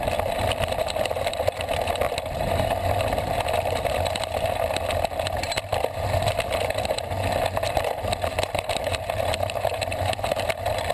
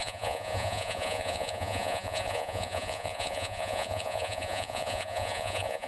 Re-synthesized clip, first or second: second